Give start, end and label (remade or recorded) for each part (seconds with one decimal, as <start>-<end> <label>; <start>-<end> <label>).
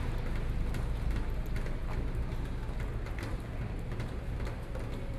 0.0-5.2 recorded